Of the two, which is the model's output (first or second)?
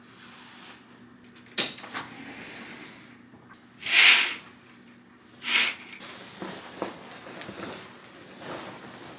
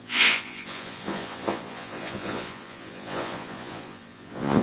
second